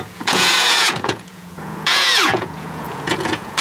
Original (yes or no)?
no